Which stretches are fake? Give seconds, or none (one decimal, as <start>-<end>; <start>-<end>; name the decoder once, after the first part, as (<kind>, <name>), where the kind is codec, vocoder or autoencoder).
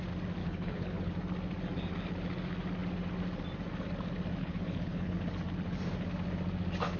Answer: 0.4-1.1 (codec, HILCodec); 4.4-5.2